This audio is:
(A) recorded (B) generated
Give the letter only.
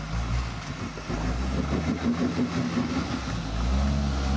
A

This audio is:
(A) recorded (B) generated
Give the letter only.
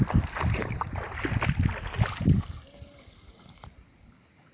A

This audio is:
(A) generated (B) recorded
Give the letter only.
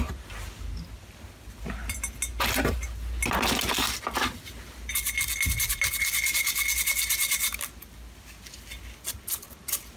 B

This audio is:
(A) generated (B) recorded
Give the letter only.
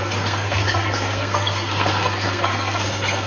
A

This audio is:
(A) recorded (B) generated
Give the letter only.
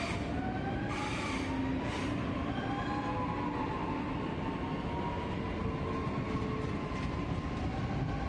A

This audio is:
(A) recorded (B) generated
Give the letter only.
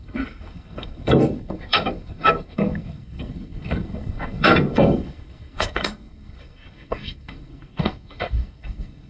B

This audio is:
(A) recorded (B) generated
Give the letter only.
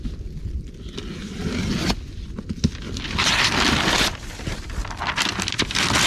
A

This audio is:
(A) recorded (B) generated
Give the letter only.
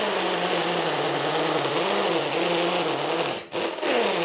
A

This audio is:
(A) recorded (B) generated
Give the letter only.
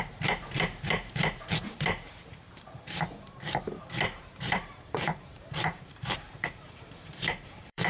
B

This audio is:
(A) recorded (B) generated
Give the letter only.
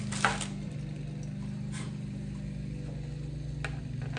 A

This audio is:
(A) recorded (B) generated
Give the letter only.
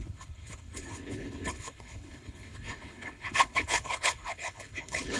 B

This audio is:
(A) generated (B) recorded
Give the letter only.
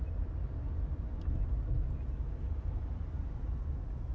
B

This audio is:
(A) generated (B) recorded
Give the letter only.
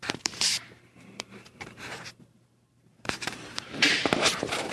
A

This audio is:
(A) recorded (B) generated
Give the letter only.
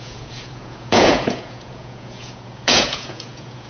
B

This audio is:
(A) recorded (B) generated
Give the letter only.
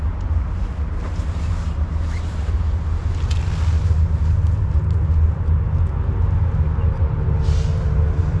A